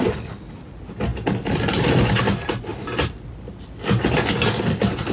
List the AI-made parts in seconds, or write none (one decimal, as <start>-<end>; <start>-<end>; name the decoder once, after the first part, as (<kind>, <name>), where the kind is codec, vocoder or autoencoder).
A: none